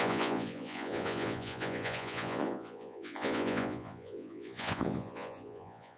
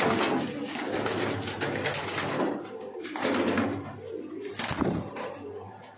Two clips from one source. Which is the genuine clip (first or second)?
second